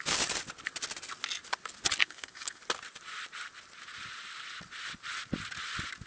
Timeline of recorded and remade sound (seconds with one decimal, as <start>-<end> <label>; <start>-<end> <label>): 0.0-2.0 recorded; 2.0-2.6 remade; 2.6-6.1 recorded